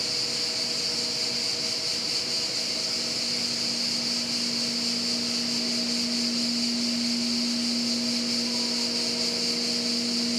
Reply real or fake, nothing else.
real